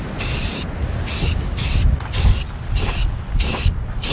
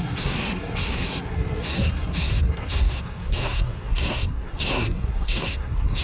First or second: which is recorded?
first